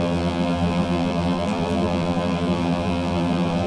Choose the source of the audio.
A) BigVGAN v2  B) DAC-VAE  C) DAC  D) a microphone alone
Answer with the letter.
A